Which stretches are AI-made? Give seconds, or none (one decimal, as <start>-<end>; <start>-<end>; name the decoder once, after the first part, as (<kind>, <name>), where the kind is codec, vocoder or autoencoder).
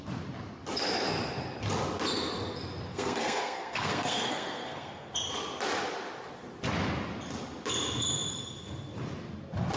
2.9-5.1 (codec, SNAC)